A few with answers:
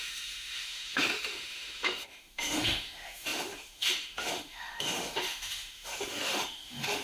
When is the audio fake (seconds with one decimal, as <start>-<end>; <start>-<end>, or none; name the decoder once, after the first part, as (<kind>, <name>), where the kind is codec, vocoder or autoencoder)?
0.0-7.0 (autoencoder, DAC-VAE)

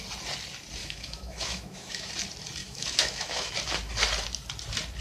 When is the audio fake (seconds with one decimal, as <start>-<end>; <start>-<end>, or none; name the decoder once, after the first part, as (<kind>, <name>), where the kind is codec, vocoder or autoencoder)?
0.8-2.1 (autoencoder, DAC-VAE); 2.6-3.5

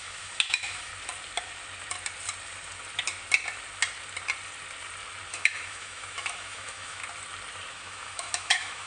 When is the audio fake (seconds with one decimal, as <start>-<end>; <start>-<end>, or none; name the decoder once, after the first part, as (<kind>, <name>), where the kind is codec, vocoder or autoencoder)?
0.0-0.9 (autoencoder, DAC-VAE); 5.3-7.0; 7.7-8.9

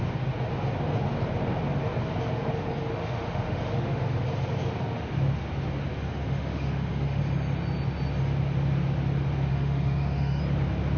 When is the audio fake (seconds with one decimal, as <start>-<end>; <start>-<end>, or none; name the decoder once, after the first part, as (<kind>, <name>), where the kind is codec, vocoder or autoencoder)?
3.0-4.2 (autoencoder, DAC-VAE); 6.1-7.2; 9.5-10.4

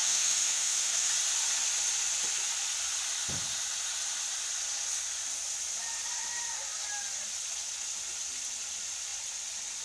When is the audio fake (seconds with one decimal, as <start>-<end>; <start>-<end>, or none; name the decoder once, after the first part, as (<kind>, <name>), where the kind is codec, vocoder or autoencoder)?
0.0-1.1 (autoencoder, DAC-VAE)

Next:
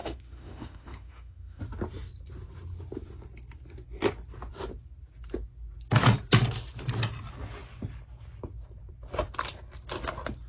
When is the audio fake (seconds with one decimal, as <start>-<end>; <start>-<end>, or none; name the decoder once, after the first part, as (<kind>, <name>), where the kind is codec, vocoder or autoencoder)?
0.0-1.6 (autoencoder, DAC-VAE)

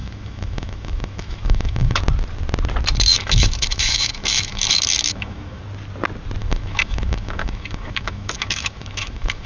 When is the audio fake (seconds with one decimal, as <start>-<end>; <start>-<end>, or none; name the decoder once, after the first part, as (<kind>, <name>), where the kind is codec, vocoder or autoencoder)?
0.0-2.0 (autoencoder, DAC-VAE); 3.1-5.6; 6.4-9.5